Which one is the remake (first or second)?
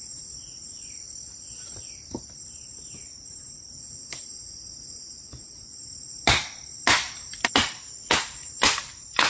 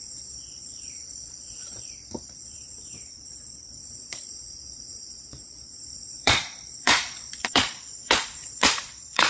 second